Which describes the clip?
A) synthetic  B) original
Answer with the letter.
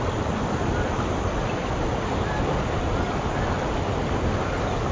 B